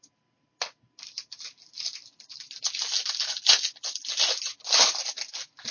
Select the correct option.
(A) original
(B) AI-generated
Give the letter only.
A